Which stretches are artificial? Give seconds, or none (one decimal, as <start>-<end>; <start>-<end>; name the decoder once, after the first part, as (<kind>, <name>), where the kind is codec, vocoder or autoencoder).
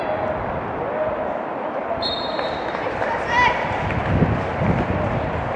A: none